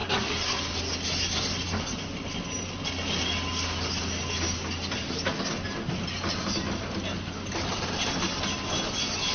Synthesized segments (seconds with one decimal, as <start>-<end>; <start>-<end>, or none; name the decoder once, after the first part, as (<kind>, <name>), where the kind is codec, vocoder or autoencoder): none